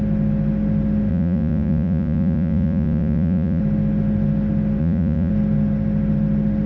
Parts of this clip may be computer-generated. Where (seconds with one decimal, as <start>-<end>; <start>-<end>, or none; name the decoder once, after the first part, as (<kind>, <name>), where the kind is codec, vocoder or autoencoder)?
1.1-3.6 (vocoder, Vocos); 4.8-5.3